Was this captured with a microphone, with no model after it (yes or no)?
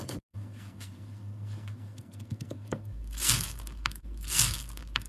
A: no